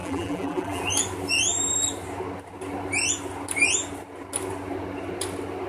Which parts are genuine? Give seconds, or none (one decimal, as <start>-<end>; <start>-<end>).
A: 0.8-5.7